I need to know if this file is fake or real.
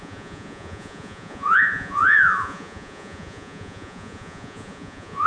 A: fake